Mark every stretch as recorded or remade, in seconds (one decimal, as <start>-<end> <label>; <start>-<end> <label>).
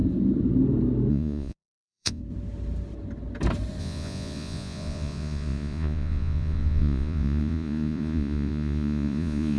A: 0.0-1.1 recorded; 1.1-2.2 remade; 2.2-3.8 recorded; 3.8-9.6 remade